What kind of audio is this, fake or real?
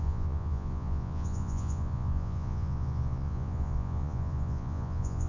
fake